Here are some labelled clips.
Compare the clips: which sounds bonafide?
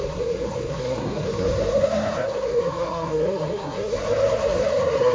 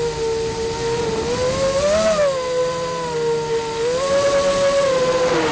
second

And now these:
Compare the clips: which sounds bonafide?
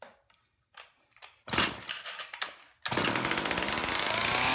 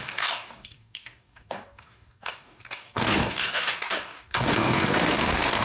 first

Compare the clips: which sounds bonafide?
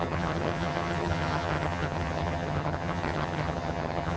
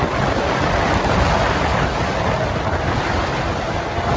second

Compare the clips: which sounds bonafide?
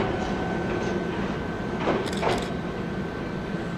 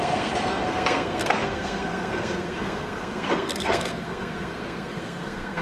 first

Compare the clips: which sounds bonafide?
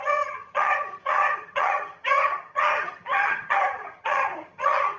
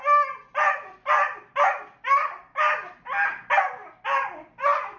second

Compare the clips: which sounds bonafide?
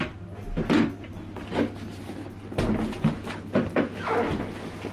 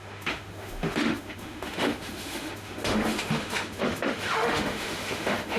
first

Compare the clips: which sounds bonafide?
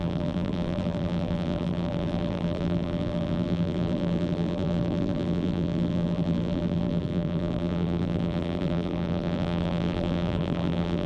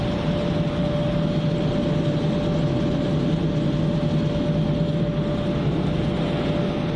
second